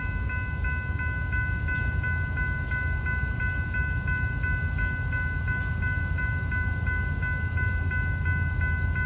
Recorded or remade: recorded